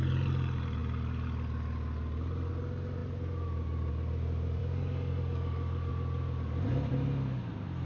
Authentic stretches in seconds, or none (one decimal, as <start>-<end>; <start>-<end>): 0.0-4.6; 5.9-7.8

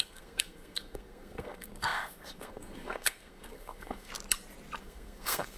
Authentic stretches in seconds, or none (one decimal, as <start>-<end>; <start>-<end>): 4.1-4.8

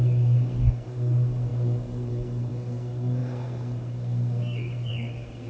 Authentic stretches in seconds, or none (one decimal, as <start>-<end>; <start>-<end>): none

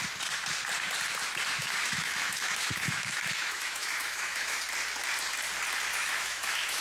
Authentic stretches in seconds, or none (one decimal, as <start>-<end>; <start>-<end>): 0.0-1.6; 4.6-5.9

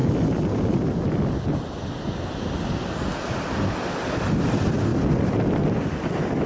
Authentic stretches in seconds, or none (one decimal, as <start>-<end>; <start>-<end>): 0.0-6.5

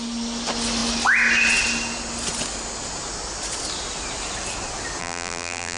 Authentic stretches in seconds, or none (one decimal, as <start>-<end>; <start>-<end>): 0.0-5.0

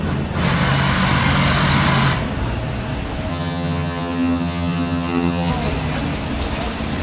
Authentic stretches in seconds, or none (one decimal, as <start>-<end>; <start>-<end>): 0.0-3.3; 5.5-7.0